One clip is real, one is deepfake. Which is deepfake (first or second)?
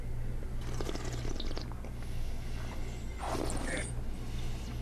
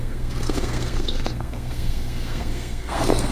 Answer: second